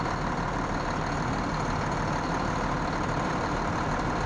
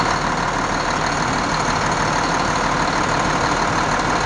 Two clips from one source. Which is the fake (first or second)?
first